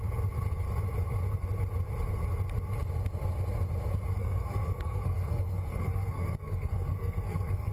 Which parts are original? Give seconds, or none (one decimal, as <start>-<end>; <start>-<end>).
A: 0.0-4.2